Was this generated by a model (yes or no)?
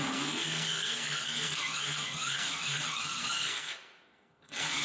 yes